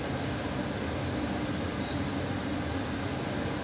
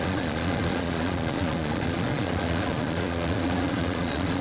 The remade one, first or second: second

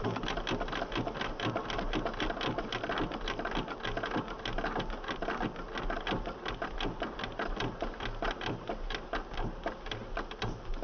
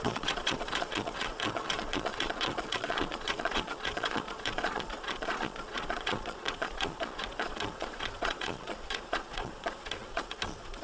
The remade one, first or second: second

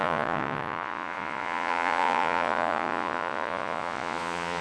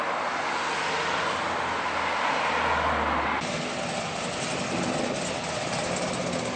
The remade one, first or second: first